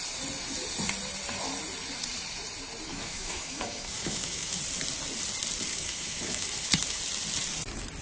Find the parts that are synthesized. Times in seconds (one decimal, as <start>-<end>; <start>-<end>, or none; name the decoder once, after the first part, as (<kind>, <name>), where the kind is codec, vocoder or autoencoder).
2.9-4.6 (autoencoder, DAC-VAE); 5.7-7.0